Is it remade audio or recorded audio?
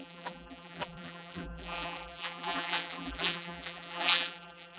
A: remade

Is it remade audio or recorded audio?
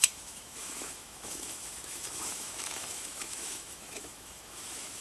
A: remade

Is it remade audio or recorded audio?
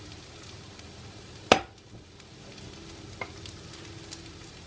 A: recorded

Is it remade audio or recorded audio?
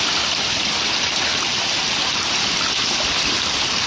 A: recorded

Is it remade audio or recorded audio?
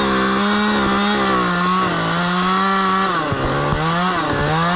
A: recorded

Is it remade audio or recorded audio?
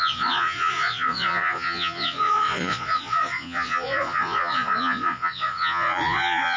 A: remade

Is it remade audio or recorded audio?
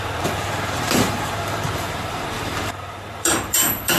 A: remade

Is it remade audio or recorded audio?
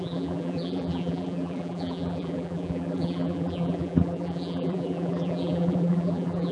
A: remade